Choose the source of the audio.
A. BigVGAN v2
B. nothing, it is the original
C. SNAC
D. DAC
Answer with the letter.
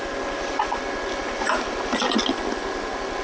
B